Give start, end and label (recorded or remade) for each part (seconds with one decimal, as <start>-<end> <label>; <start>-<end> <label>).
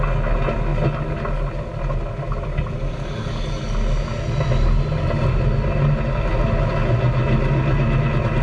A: 0.0-8.4 recorded